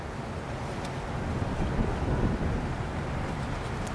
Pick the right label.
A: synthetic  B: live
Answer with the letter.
B